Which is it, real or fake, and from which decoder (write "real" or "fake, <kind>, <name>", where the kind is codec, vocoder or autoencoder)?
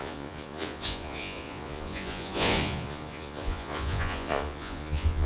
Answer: fake, vocoder, Vocos